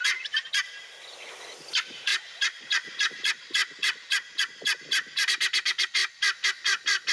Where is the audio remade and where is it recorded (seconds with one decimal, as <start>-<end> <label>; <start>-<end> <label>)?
0.0-7.1 recorded